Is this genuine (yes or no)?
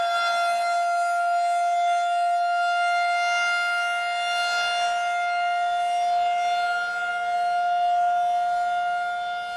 yes